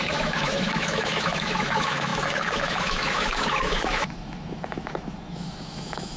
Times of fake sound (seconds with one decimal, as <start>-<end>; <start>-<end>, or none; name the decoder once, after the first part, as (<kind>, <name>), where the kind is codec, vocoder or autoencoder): 0.0-6.2 (autoencoder, DAC-VAE)